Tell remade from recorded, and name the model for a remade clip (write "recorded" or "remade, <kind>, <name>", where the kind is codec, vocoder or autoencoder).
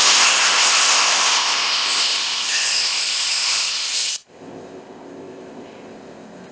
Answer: remade, codec, ZipCodec